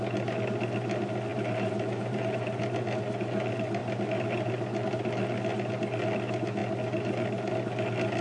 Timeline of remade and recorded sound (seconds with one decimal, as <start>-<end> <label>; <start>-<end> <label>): 0.0-1.3 recorded; 1.3-2.6 remade; 2.6-8.2 recorded